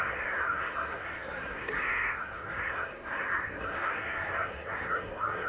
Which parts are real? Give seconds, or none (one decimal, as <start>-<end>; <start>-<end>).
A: none

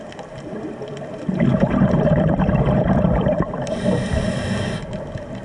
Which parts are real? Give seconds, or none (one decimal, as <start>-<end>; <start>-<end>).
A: 0.0-1.5; 3.5-5.4

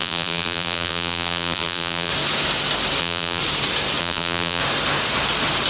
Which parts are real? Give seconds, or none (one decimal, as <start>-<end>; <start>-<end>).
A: 2.1-3.0; 3.4-4.0; 4.6-5.7

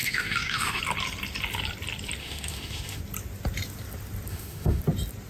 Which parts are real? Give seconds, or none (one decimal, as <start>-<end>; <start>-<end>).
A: 0.8-2.2; 3.0-4.3; 4.8-5.3

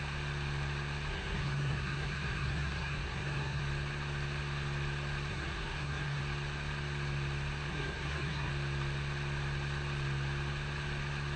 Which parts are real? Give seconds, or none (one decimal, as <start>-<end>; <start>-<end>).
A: 0.0-1.1; 3.6-5.3; 6.2-7.7; 8.5-11.4

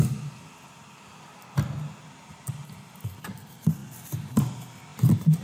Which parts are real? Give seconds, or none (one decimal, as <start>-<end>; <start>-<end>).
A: 0.0-2.3; 2.9-5.4

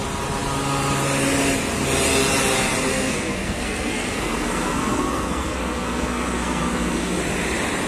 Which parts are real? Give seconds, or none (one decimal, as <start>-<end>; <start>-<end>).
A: 0.0-2.9; 7.2-7.9

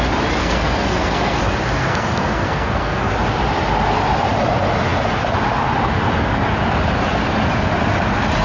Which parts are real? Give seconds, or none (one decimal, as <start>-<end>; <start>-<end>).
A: 0.0-0.4; 1.4-1.8; 3.0-8.4